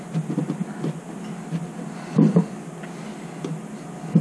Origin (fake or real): real